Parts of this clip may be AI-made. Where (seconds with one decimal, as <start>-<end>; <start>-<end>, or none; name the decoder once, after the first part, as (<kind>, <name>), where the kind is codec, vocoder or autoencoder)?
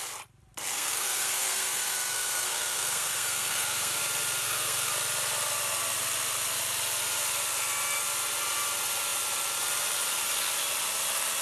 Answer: 0.7-4.0 (codec, SNAC); 4.4-4.9